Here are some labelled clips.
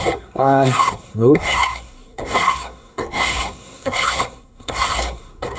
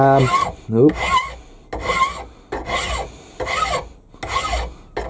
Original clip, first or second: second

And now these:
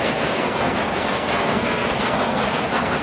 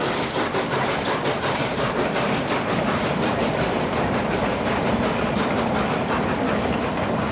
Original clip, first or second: second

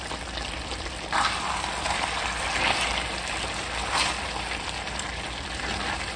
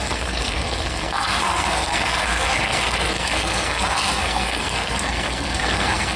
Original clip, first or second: first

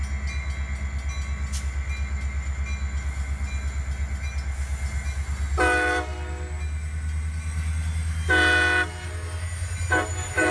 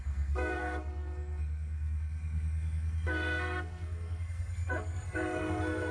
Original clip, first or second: first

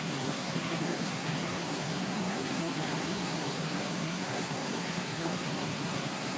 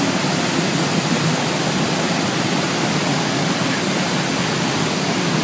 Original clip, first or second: second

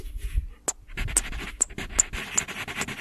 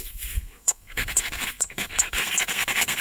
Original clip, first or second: first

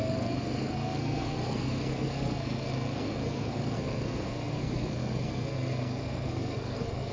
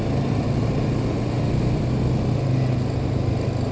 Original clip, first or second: second